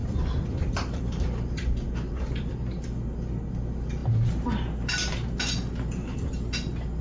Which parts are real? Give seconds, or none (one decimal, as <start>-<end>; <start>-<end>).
2.5-7.0